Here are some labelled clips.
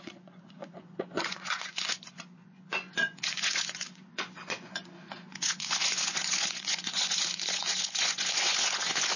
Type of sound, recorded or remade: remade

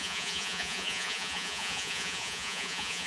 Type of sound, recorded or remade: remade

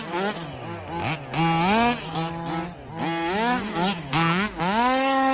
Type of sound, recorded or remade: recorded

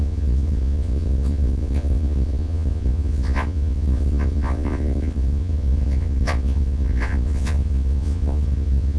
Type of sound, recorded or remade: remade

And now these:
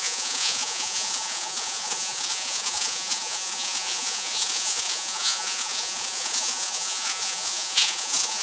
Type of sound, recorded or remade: remade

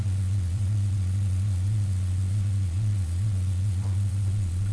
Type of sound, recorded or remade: remade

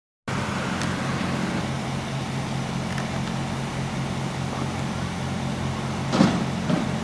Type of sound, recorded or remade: recorded